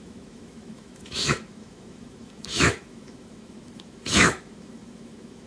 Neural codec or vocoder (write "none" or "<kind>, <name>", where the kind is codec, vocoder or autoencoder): autoencoder, DAC-VAE